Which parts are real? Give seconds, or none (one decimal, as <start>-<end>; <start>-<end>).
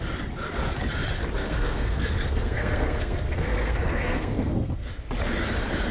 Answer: 0.0-1.4; 4.9-5.9